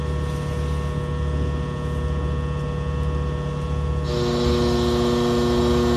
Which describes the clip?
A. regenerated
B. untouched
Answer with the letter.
B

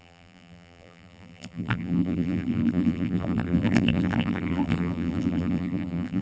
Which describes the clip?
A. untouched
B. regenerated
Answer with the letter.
B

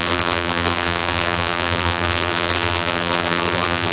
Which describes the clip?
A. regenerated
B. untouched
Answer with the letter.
A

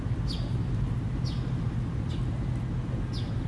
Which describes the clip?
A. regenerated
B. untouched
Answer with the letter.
B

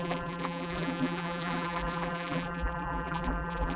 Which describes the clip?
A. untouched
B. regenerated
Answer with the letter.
B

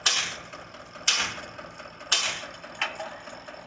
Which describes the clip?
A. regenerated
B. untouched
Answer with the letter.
B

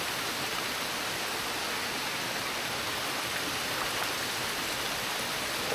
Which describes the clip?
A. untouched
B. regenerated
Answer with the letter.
A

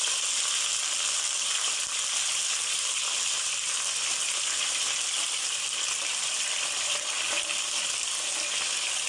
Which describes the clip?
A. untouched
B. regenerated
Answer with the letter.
A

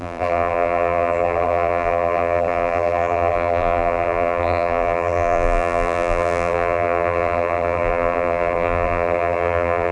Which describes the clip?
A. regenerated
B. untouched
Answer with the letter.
A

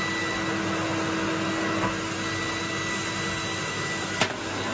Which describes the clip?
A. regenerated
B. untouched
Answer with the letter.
B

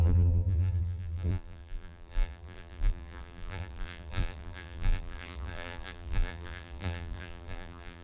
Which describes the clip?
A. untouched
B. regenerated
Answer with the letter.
B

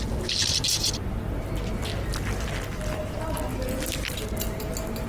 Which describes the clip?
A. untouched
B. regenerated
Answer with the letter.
A